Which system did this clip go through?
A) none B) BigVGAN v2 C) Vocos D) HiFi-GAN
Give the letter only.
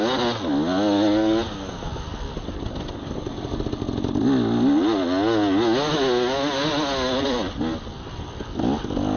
A